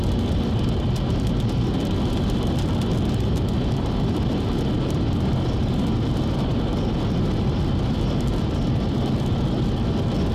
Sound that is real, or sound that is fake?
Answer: real